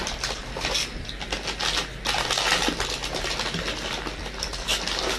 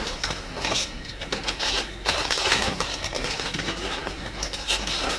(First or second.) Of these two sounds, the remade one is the second